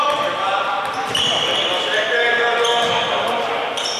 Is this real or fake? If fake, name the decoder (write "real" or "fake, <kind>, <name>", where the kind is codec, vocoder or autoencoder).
real